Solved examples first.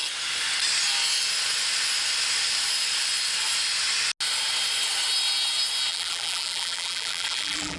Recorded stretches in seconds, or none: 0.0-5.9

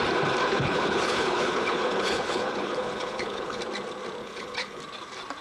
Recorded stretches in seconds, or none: 0.0-0.4; 3.6-4.2; 4.8-5.4

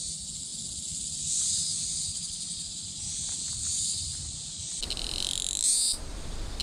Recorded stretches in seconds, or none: 0.0-6.6

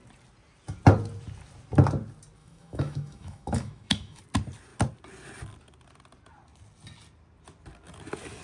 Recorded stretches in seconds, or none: 0.0-2.4; 4.2-8.4

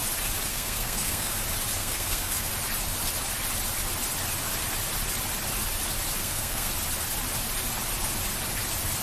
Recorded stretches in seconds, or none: 0.0-0.5; 1.3-1.8; 2.5-6.2; 6.7-9.0

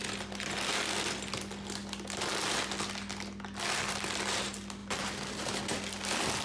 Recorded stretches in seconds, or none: 0.0-4.8; 5.6-6.4

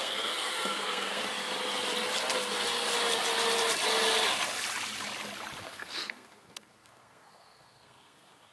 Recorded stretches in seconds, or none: 1.2-5.6